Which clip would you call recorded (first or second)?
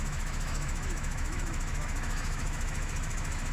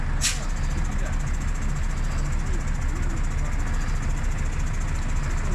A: second